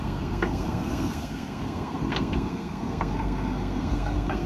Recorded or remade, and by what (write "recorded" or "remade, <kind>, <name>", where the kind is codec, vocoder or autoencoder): remade, codec, SNAC